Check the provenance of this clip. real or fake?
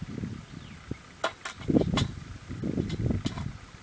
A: real